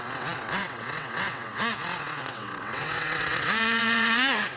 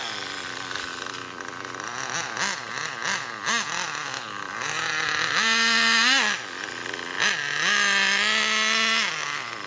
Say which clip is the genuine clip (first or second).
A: second